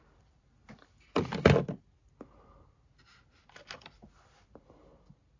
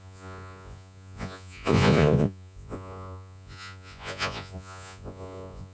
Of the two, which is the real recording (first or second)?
first